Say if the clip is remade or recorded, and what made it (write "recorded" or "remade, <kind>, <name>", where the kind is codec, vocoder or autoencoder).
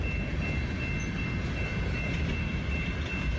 recorded